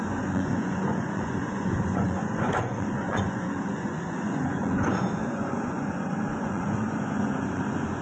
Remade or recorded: remade